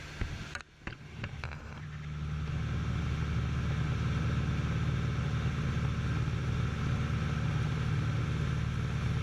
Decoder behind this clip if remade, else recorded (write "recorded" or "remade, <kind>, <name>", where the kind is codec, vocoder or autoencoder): recorded